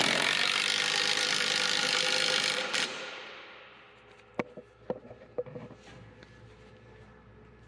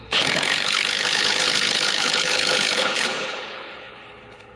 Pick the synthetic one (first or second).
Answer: second